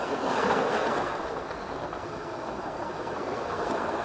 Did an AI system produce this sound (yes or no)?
yes